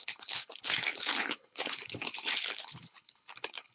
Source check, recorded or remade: remade